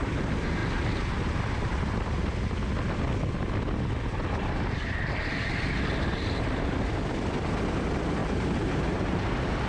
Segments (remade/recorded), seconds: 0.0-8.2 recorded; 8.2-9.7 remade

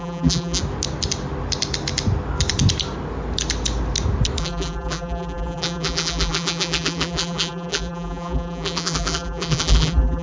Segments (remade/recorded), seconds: 0.0-0.6 remade; 0.6-4.4 recorded; 4.4-10.2 remade

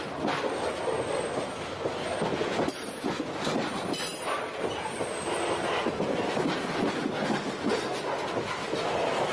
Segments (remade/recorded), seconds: 0.0-9.3 recorded

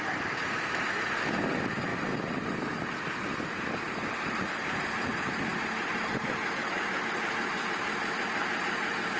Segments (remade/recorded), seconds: 0.0-9.2 remade

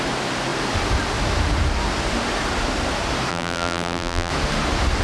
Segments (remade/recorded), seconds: 0.0-3.3 recorded; 3.3-4.3 remade; 4.3-5.0 recorded

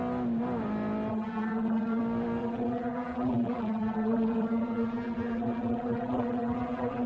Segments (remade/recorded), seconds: 0.0-1.1 recorded; 1.1-2.0 remade; 2.0-2.4 recorded; 2.4-7.1 remade